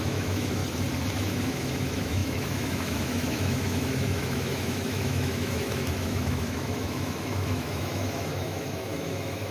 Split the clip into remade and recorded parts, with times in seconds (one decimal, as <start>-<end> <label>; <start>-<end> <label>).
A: 0.0-0.6 remade; 0.6-1.1 recorded; 1.1-9.5 remade

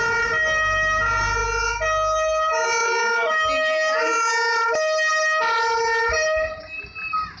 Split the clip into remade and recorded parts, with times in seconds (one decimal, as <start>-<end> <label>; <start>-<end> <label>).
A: 0.0-7.4 recorded

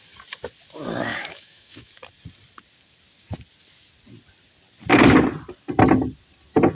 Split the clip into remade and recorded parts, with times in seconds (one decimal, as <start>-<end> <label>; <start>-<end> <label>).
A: 0.0-1.1 recorded; 1.1-1.9 remade; 1.9-6.7 recorded

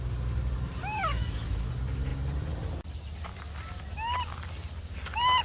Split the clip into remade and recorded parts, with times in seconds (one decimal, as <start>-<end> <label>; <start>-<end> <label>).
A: 0.0-1.0 recorded; 1.0-1.7 remade; 1.7-5.4 recorded